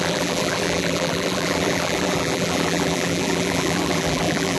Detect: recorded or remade remade